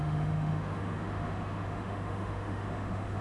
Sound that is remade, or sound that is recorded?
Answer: remade